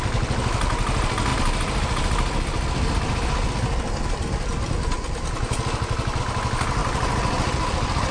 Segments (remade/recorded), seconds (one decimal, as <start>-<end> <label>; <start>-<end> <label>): 0.0-8.1 recorded